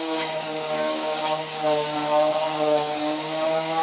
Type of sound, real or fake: fake